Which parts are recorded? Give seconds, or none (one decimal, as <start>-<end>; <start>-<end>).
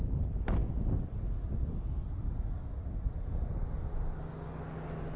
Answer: 0.0-5.2